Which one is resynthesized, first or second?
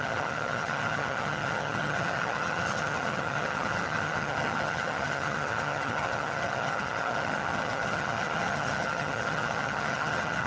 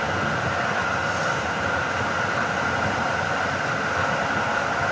first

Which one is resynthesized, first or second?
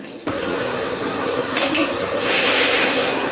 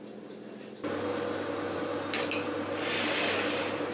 first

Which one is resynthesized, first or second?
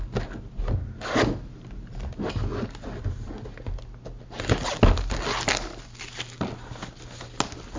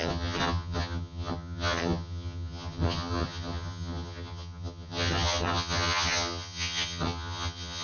second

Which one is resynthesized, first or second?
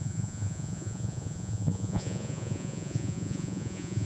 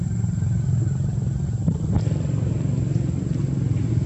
first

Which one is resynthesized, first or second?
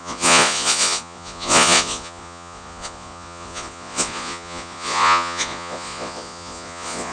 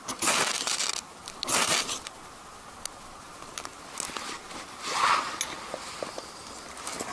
first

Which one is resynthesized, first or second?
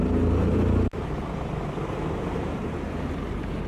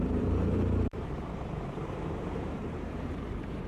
second